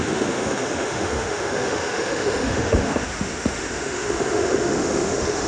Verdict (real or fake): fake